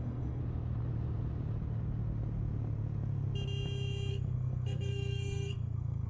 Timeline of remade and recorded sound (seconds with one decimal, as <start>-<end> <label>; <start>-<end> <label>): 0.0-0.4 remade; 0.4-4.1 recorded; 4.1-6.1 remade